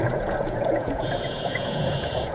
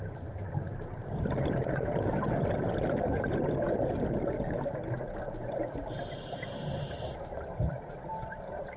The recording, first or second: second